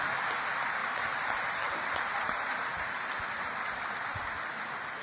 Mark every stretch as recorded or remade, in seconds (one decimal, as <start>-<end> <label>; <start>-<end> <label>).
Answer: 0.0-0.8 recorded; 0.8-3.6 remade; 3.6-5.0 recorded